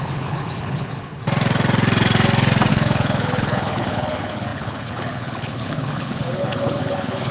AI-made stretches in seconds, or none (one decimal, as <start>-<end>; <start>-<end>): 0.0-1.2; 2.7-7.3